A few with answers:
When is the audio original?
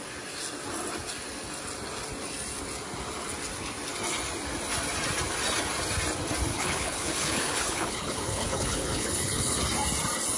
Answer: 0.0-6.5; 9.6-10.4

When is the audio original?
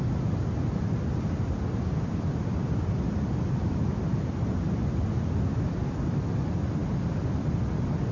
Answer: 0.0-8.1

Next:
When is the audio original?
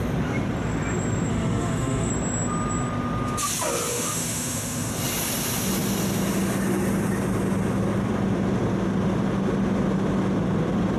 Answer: 0.0-1.3; 2.1-3.9; 4.9-11.0